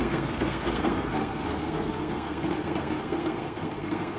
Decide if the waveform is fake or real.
fake